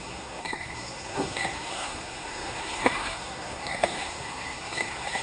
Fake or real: fake